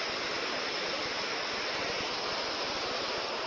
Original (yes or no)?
yes